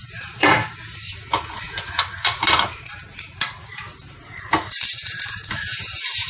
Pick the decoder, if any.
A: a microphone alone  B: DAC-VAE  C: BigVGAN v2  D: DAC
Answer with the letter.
C